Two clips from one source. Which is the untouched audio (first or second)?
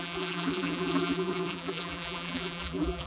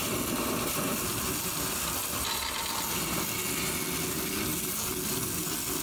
second